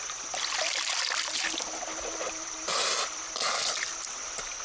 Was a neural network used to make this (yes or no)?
no